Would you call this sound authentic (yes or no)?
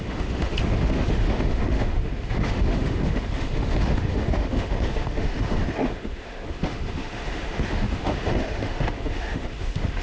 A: no